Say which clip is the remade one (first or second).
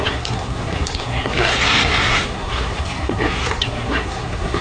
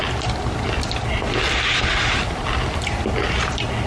first